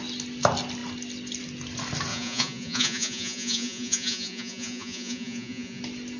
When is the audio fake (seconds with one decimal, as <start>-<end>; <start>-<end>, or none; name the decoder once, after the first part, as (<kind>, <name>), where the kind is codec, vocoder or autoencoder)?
2.1-5.8 (vocoder, Vocos)